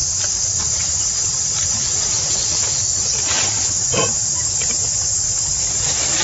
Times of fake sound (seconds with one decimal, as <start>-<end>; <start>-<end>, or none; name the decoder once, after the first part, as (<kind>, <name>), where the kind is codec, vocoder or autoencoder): none